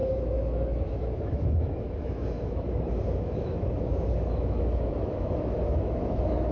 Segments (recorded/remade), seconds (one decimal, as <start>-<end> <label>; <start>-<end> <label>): 0.0-6.5 remade